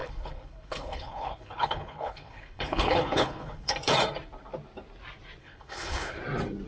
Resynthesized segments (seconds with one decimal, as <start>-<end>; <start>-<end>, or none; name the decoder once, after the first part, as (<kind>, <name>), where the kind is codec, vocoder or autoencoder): 0.0-3.7 (codec, HILCodec); 5.4-6.2